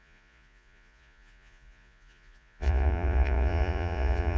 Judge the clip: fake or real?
fake